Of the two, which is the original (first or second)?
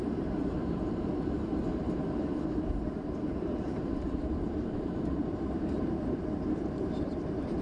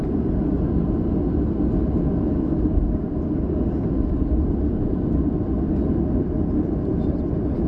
second